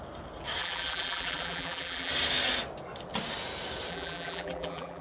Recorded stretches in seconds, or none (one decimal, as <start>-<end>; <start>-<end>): 0.0-0.6; 2.1-3.9